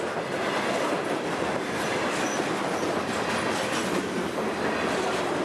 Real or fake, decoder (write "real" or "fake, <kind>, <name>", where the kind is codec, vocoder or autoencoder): real